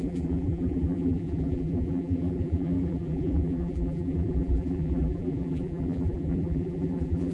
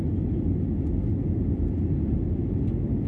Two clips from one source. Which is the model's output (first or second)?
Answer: first